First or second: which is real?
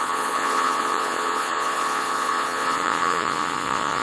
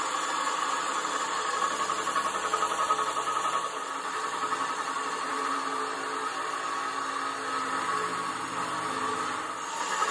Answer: second